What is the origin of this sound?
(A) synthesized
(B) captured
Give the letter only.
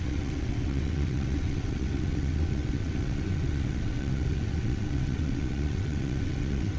A